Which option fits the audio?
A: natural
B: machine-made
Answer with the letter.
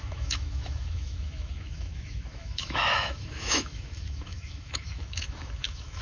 B